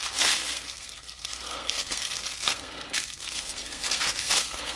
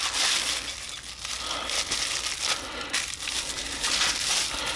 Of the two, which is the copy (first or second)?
first